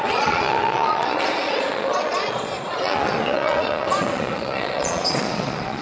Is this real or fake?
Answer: fake